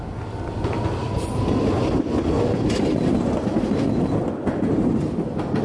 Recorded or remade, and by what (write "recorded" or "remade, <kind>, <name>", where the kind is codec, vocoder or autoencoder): recorded